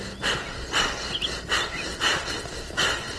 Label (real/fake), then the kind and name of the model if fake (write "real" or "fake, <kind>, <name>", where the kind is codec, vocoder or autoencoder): real